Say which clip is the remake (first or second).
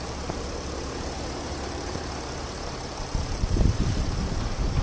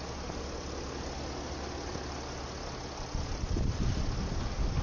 first